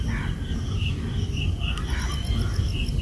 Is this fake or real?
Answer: real